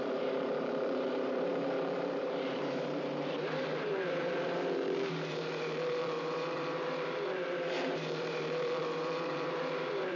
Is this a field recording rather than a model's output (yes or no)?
no